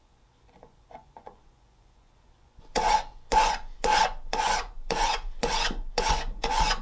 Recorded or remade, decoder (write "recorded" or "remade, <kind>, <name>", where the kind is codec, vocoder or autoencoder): remade, vocoder, Vocos